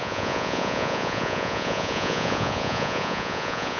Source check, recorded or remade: remade